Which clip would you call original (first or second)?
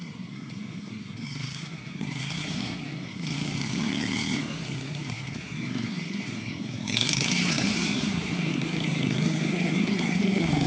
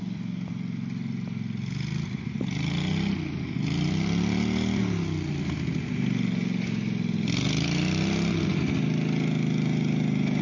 second